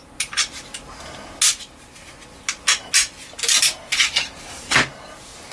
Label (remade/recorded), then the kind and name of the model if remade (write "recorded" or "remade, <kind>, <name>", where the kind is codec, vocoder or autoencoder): recorded